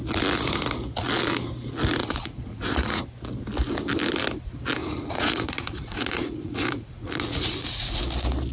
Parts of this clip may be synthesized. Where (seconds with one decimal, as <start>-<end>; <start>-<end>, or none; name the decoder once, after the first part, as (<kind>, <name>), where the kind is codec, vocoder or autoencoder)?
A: 2.0-3.0 (vocoder, Vocos); 4.8-8.0